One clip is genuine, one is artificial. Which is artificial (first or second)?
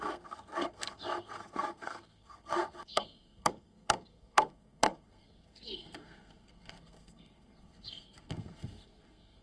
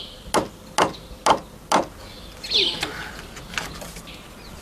first